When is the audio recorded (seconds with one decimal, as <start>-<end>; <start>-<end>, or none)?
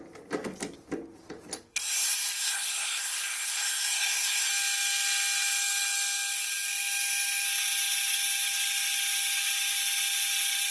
0.0-1.7; 4.5-10.7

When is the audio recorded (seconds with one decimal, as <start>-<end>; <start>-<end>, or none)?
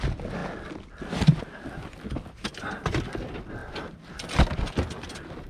0.0-5.5